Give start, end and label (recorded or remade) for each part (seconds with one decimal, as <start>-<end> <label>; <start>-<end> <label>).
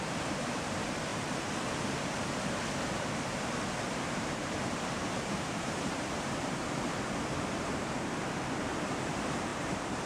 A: 0.0-10.1 remade